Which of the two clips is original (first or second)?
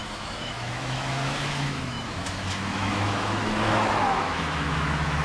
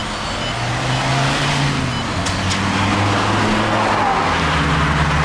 second